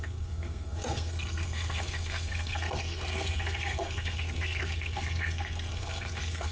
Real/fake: fake